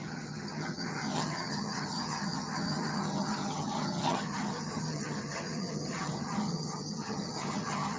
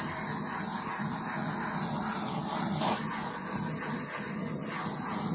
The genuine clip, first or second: second